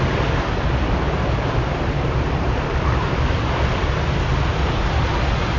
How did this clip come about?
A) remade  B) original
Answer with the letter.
B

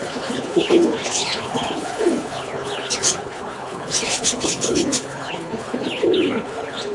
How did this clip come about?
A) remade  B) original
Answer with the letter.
A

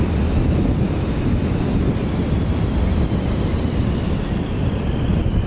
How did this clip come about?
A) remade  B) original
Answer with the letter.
B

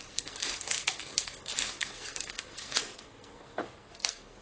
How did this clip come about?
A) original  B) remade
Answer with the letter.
B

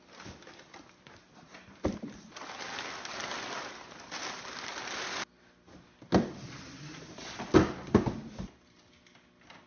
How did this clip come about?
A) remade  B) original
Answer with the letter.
B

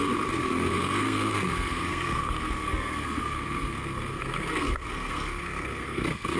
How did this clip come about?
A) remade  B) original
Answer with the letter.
A